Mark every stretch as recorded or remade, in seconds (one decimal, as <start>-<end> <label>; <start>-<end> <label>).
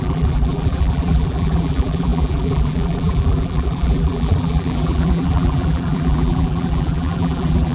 0.0-7.7 remade